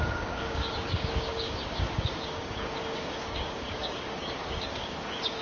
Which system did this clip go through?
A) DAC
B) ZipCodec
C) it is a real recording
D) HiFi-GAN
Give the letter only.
A